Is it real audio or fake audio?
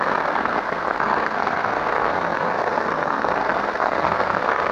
fake